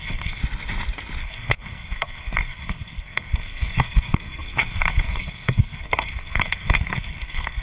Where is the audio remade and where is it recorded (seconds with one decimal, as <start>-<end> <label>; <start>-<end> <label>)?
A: 0.0-0.4 remade; 0.4-1.2 recorded; 1.2-7.6 remade